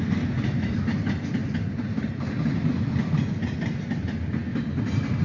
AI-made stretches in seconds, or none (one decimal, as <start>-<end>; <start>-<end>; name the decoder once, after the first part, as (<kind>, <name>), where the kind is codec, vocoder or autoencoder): none